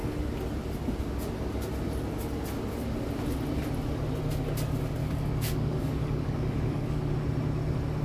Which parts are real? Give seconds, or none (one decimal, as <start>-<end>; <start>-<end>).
0.0-5.0; 7.1-8.0